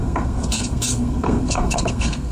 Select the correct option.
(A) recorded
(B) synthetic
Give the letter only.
B